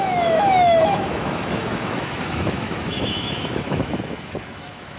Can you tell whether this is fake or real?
fake